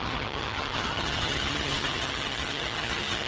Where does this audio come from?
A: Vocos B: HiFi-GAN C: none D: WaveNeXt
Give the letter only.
B